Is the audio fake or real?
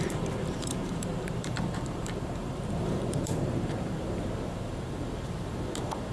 fake